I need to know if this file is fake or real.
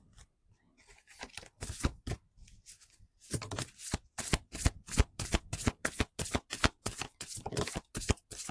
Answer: fake